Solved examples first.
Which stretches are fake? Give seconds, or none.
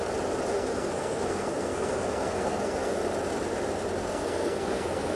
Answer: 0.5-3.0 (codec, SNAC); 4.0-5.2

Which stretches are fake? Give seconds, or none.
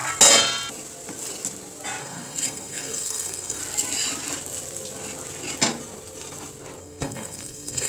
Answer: 2.0-3.6 (codec, SNAC); 6.8-7.9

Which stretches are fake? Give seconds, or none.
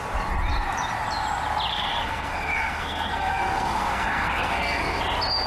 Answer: 1.7-5.0 (codec, SNAC)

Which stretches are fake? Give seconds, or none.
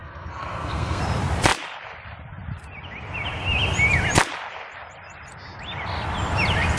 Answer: 0.0-1.0 (codec, SNAC)